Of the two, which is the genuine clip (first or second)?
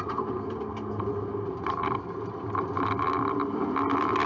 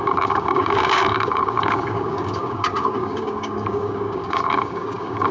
first